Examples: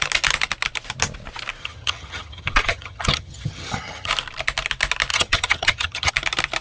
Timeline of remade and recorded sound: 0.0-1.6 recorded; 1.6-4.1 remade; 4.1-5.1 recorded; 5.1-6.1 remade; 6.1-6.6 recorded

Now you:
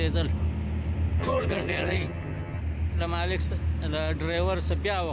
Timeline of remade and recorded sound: 0.0-1.2 recorded; 1.2-2.6 remade; 2.6-5.1 recorded

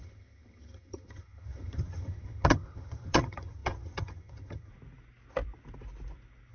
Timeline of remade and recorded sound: 0.0-4.7 remade; 4.7-6.5 recorded